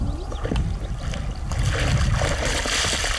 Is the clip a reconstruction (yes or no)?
no